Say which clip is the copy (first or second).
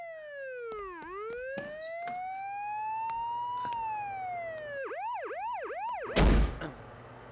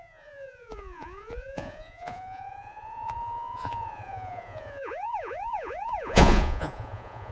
second